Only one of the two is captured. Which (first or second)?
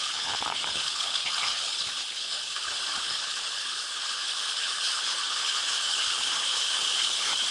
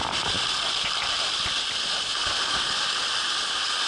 second